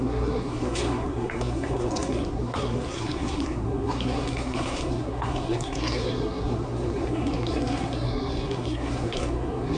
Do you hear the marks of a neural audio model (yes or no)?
yes